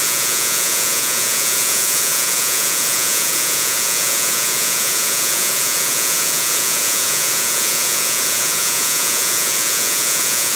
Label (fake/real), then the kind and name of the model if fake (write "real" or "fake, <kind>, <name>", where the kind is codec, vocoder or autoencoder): fake, vocoder, Vocos